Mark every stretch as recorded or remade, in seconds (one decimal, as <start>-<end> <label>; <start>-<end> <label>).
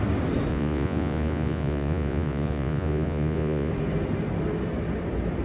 0.0-0.5 recorded; 0.5-3.7 remade; 3.7-5.4 recorded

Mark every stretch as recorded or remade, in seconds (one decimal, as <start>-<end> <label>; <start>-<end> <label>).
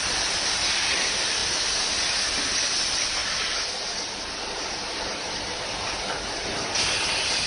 0.0-7.5 recorded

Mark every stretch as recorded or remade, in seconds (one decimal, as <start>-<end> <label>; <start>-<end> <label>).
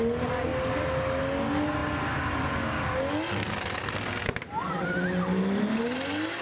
0.0-6.4 recorded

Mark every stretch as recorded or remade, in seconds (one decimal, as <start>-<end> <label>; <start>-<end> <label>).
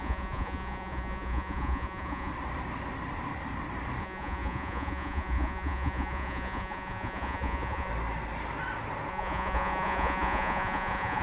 0.0-2.3 remade; 2.3-4.0 recorded; 4.0-7.9 remade; 7.9-9.1 recorded; 9.1-11.2 remade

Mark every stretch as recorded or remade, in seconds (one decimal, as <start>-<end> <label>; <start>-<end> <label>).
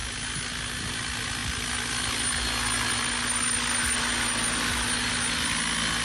0.0-6.0 recorded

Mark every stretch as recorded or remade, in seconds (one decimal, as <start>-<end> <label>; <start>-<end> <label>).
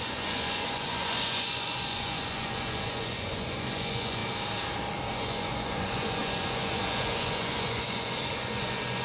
0.0-4.2 remade; 4.2-5.1 recorded; 5.1-9.0 remade